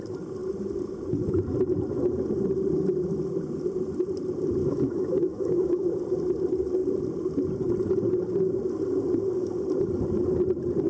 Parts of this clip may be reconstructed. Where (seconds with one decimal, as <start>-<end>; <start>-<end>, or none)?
4.6-5.9